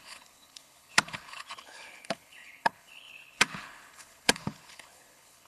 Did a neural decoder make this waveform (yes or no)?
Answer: yes